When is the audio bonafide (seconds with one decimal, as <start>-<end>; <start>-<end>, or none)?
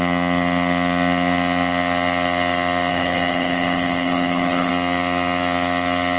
0.0-2.9; 4.7-6.2